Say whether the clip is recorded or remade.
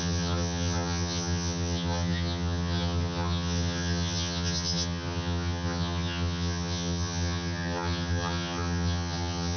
remade